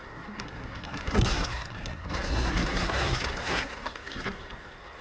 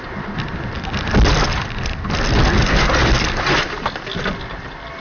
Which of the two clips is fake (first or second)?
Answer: first